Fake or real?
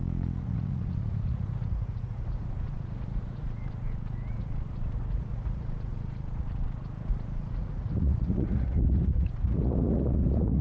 fake